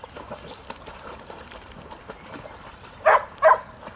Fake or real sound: real